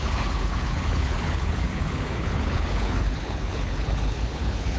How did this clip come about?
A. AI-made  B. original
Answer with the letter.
A